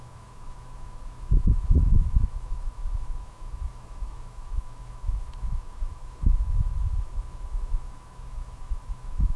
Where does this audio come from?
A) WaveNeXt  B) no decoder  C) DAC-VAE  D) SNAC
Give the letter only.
C